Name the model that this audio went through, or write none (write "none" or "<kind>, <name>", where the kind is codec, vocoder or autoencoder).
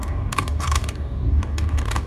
codec, DAC